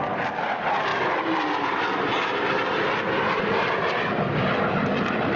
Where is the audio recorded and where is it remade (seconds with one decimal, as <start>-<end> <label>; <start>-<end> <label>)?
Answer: 0.0-5.4 recorded